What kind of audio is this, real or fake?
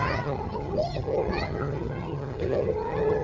fake